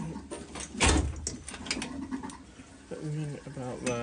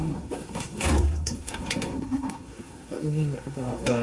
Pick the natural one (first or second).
first